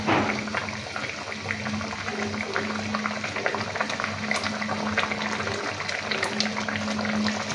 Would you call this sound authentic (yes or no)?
yes